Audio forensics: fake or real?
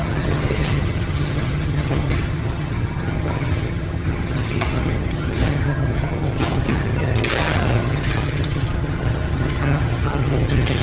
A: fake